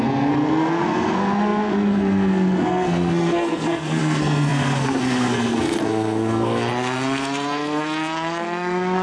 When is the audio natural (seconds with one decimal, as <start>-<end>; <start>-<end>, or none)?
none